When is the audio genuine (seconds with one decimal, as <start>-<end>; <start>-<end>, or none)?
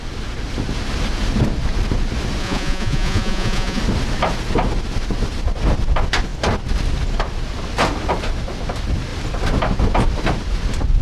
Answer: 0.0-2.4; 3.8-11.0